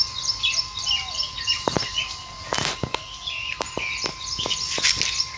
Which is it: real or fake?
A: real